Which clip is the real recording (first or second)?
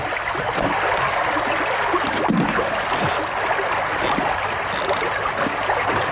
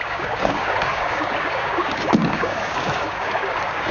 first